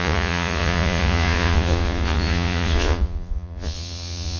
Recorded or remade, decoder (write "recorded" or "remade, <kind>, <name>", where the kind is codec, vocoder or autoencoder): remade, vocoder, Vocos